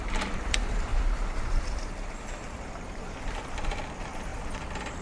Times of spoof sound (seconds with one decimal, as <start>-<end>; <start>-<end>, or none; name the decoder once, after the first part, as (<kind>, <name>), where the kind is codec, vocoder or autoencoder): 0.0-4.3 (vocoder, BigVGAN v2)